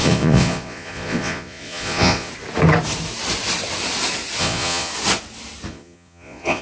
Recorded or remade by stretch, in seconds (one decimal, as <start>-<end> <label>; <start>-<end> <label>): 0.0-2.3 remade; 2.3-4.4 recorded; 4.4-4.9 remade; 4.9-5.7 recorded; 5.7-6.6 remade